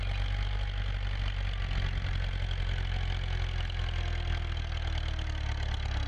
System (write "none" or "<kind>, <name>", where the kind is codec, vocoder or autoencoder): none